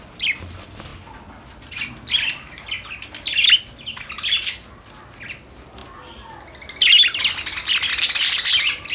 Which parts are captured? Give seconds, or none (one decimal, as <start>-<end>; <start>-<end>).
0.0-8.9